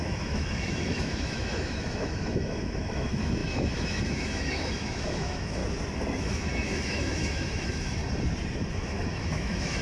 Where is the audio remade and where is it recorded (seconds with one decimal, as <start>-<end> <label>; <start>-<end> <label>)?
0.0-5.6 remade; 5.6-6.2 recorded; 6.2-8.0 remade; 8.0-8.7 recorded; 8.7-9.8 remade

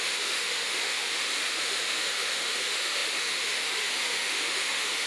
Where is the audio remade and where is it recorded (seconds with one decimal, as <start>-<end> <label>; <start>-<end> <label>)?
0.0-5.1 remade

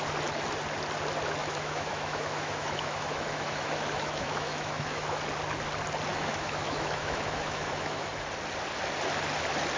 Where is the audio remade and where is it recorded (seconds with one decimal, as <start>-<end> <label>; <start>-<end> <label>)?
0.0-1.4 recorded; 1.4-5.2 remade; 5.2-6.1 recorded; 6.1-8.1 remade; 8.1-9.8 recorded

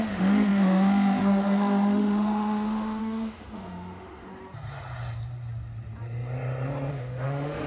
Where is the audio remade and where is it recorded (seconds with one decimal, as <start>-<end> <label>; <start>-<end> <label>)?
0.0-4.3 remade; 4.3-6.9 recorded; 6.9-7.7 remade

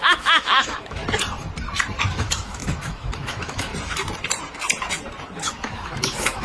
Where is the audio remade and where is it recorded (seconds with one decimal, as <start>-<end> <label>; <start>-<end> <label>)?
0.0-1.0 remade; 1.0-2.1 recorded; 2.1-3.7 remade; 3.7-5.4 recorded; 5.4-6.4 remade

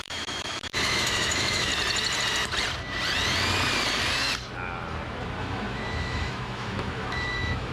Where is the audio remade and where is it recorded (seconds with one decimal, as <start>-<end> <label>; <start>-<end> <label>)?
0.0-1.7 remade; 1.7-5.4 recorded; 5.4-7.7 remade

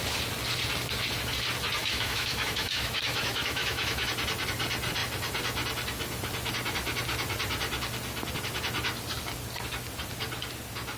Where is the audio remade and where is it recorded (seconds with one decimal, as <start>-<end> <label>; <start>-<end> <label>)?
0.0-1.8 recorded; 1.8-4.1 remade; 4.1-11.0 recorded